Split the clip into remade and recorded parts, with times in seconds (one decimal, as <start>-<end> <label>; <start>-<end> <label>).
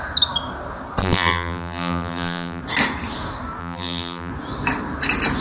0.0-1.0 recorded; 1.0-2.6 remade; 2.6-3.6 recorded; 3.6-4.3 remade; 4.3-5.4 recorded